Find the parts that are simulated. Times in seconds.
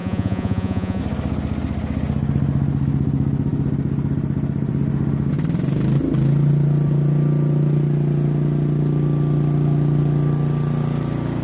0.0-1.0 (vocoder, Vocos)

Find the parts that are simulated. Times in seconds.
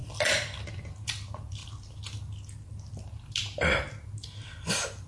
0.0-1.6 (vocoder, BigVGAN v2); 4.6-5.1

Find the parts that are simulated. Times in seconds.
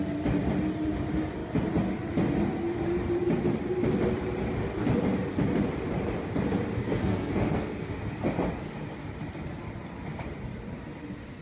6.8-7.9 (codec, SNAC)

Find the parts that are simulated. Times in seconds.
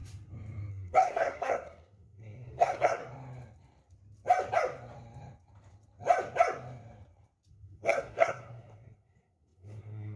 0.7-3.0 (codec, SNAC); 7.5-10.2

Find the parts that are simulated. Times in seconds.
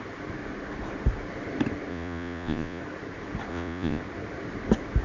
1.9-2.8 (vocoder, Vocos); 3.5-4.0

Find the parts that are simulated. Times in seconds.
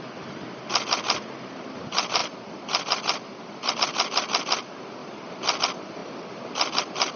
none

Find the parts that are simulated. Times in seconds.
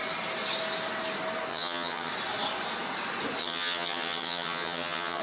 1.5-2.1 (vocoder, HiFi-GAN); 3.4-5.2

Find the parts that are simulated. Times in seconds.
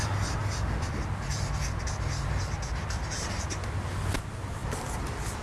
none